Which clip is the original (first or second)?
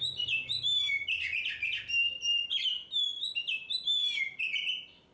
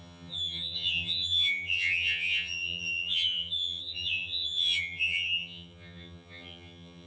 first